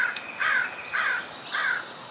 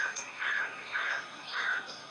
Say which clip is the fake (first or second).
second